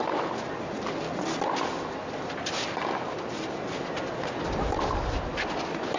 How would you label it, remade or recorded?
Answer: recorded